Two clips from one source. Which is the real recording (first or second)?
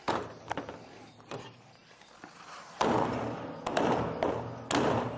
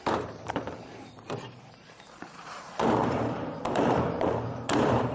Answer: first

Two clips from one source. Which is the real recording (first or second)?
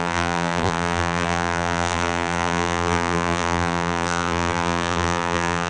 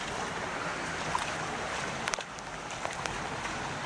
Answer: second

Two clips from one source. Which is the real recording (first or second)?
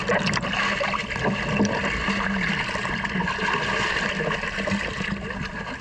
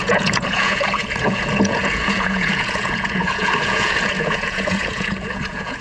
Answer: first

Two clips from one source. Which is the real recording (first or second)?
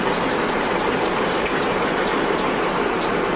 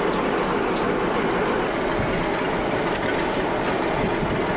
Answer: second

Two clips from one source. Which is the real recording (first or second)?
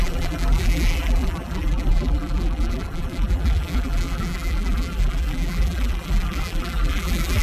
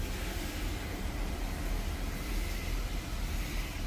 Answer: second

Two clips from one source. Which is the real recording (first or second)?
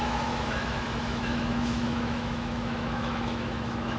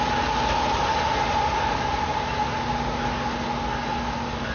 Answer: second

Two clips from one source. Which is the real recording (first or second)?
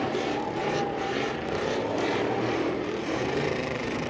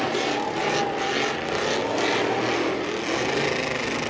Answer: second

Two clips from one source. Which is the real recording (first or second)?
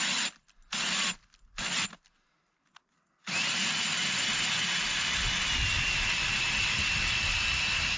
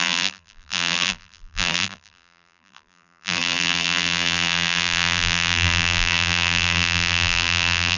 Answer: first